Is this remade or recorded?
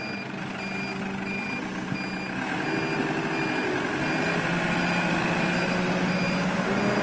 recorded